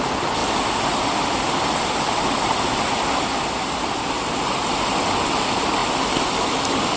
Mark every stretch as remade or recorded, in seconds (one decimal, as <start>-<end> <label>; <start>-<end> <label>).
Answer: 0.0-7.0 recorded